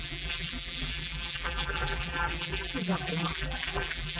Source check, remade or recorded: remade